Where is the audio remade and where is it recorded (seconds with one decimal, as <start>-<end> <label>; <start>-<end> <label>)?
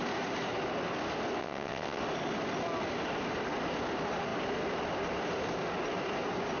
0.0-1.4 recorded; 1.4-2.0 remade; 2.0-6.6 recorded